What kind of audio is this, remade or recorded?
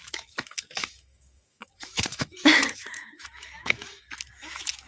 remade